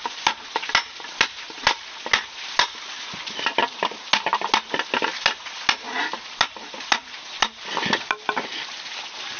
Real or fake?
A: real